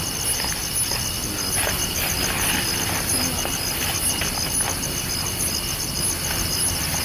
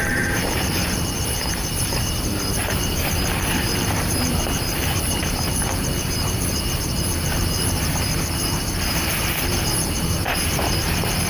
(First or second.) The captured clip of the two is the first